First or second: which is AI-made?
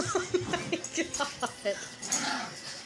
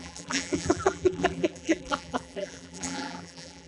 second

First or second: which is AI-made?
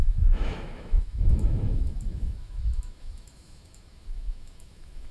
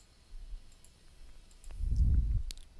first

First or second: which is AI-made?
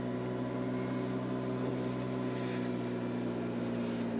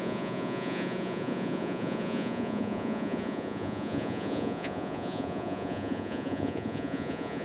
second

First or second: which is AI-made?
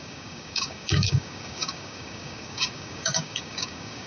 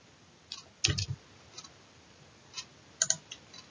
first